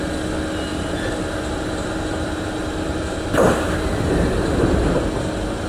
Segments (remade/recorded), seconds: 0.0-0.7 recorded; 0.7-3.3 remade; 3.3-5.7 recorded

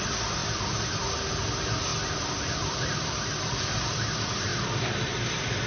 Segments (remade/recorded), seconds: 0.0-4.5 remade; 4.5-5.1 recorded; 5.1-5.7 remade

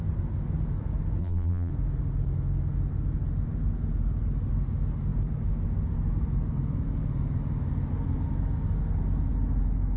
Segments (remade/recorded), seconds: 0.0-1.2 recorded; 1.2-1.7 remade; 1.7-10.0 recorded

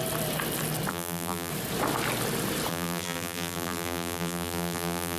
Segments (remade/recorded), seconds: 0.0-0.9 recorded; 0.9-1.5 remade; 1.5-2.7 recorded; 2.7-5.2 remade

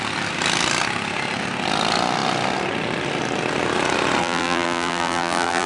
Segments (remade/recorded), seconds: 0.0-4.2 recorded; 4.2-5.7 remade